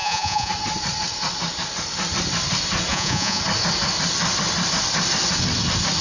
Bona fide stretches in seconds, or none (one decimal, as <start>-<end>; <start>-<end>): 0.5-2.9; 3.4-6.0